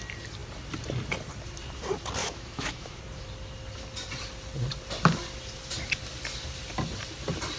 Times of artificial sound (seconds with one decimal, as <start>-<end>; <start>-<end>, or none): 2.2-3.0